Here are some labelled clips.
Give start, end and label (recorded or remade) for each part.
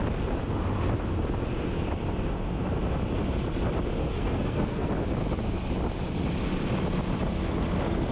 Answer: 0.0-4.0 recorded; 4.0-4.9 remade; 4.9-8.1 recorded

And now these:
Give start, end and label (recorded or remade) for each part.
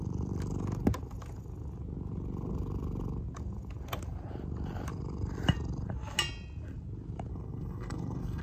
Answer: 0.0-7.3 recorded; 7.3-8.4 remade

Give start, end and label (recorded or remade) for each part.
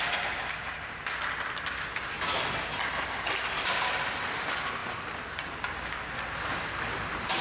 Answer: 0.0-7.4 recorded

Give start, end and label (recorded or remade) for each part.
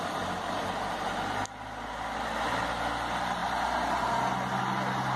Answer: 0.0-5.2 recorded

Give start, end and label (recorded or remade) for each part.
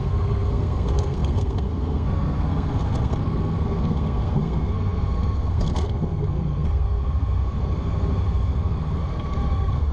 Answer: 0.0-9.9 remade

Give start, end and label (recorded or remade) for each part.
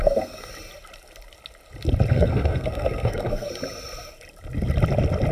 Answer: 0.0-0.5 remade; 0.5-2.1 recorded; 2.1-3.5 remade; 3.5-5.3 recorded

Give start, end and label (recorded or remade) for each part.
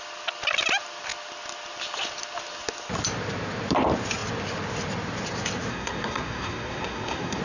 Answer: 0.0-5.7 recorded; 5.7-7.4 remade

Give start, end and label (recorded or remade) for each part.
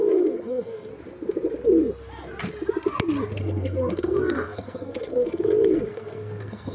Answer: 0.0-0.9 remade; 0.9-3.4 recorded; 3.4-6.7 remade